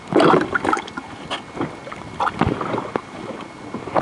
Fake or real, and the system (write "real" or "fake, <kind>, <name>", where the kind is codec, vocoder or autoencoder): real